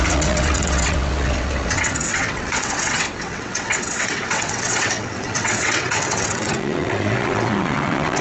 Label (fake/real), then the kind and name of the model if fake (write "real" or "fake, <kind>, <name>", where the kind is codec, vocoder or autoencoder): fake, vocoder, WaveNeXt